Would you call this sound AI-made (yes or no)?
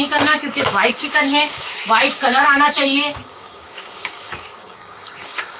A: yes